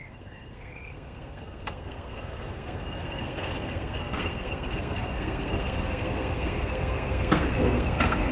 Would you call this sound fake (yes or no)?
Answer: yes